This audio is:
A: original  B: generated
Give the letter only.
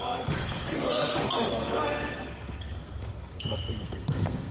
B